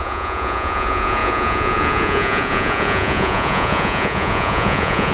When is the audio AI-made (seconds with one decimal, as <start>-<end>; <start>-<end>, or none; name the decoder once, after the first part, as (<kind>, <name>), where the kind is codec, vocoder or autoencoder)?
0.0-5.1 (vocoder, Vocos)

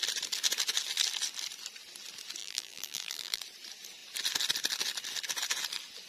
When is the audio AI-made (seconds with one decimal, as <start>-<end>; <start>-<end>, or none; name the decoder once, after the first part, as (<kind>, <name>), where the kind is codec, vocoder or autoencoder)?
2.4-3.4 (vocoder, BigVGAN v2)

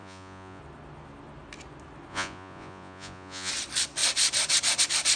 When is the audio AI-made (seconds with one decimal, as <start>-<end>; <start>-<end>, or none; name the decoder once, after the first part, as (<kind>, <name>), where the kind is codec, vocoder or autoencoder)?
0.0-0.6 (vocoder, Vocos); 2.1-3.5

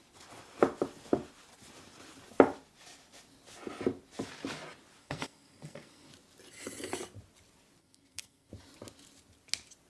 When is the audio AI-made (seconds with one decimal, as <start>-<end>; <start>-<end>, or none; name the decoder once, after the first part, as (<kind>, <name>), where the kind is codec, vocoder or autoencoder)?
5.0-6.1 (codec, SNAC); 7.8-8.5

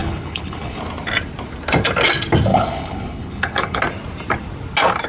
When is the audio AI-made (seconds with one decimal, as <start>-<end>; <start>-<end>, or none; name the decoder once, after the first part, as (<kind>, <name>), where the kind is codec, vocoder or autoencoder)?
0.0-0.8 (codec, HILCodec); 2.5-3.8

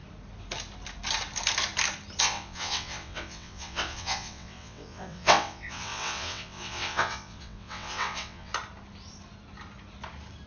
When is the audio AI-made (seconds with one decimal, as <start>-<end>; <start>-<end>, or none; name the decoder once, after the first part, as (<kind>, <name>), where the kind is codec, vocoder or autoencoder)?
2.2-8.5 (vocoder, WaveNeXt)